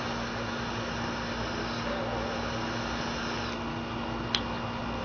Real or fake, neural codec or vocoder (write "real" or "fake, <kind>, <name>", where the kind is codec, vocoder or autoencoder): real